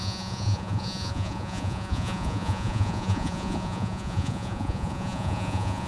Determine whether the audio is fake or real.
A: fake